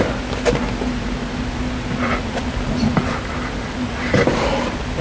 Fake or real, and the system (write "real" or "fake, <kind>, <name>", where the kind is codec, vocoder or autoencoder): real